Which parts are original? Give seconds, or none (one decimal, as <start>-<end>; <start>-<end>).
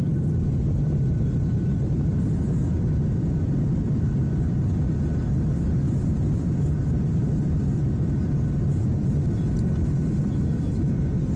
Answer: 0.0-11.4